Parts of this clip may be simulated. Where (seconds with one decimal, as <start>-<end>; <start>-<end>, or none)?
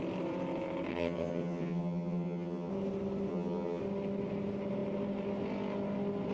0.9-2.7; 3.3-3.8